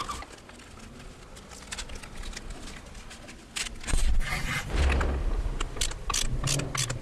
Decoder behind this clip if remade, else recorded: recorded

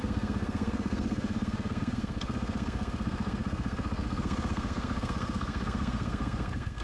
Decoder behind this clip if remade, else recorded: remade, codec, SNAC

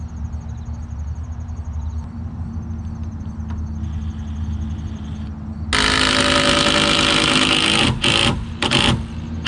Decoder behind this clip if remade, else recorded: recorded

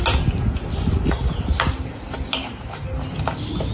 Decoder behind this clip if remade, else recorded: recorded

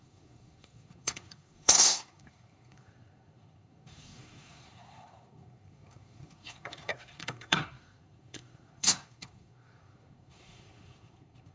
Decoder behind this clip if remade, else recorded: remade, codec, SNAC